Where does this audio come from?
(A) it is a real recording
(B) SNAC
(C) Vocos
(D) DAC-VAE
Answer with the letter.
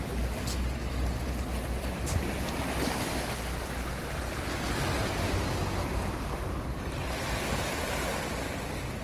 A